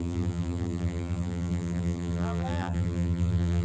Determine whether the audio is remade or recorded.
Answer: remade